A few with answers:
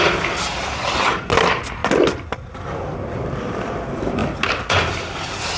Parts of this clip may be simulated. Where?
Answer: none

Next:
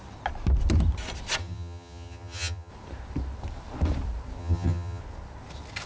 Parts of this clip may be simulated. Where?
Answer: 1.4-2.7; 4.4-5.0

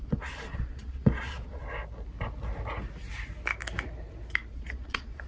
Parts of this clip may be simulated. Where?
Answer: 0.0-1.6; 4.5-5.3

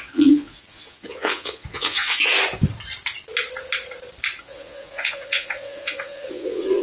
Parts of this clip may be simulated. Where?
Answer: 0.0-2.3; 4.4-6.8

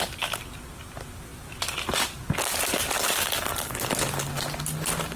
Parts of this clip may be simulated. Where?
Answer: none

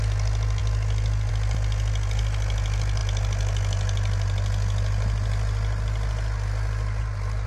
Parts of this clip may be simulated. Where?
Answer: none